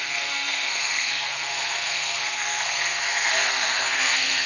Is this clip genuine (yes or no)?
no